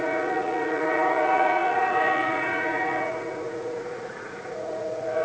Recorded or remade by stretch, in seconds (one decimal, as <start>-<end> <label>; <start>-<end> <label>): 0.0-5.2 remade